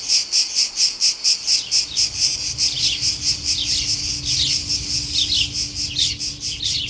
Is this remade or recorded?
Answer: recorded